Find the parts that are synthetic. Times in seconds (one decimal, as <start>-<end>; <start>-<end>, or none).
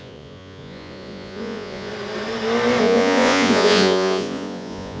0.0-1.9; 2.8-5.0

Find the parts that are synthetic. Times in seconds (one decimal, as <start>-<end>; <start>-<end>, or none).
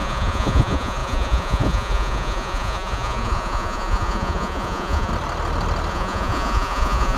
0.0-5.1; 5.9-7.2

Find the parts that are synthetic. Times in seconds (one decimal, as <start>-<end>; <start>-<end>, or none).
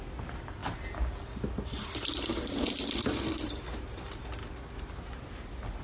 none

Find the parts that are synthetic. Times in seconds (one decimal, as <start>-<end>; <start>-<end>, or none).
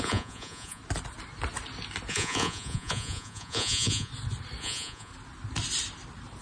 0.0-0.8; 2.1-4.1; 4.6-5.1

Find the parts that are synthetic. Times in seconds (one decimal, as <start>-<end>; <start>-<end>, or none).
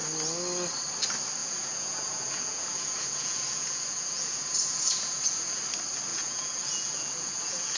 1.4-5.6; 6.1-7.8